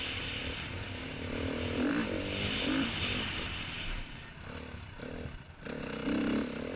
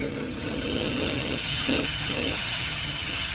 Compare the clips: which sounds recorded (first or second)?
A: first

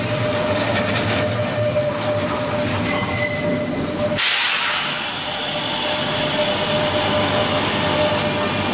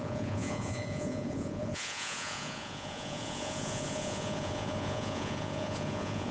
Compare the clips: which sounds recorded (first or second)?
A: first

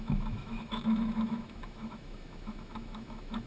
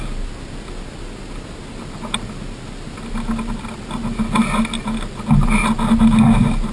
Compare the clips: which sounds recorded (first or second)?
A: second